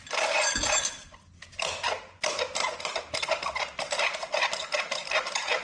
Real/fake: real